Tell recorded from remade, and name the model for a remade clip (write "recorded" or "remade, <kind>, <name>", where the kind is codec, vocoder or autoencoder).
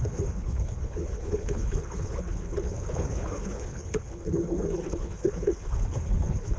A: remade, codec, HILCodec